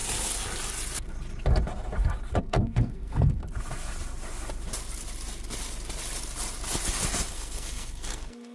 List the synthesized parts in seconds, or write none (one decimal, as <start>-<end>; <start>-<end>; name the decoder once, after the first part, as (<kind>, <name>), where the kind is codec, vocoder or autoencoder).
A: 2.4-3.4 (codec, SNAC); 7.3-8.5

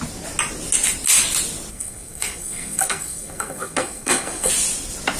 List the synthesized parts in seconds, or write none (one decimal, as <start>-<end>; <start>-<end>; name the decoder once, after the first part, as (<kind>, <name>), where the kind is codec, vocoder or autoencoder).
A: 1.7-4.5 (codec, SNAC)